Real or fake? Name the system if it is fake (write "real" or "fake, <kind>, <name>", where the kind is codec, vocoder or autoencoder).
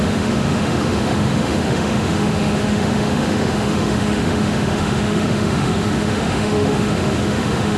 fake, autoencoder, DAC-VAE